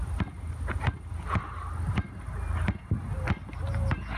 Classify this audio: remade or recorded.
recorded